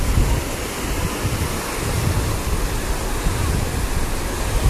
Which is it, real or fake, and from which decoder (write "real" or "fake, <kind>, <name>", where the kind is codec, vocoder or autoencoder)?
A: real